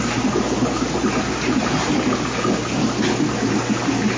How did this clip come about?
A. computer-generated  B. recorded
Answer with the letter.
B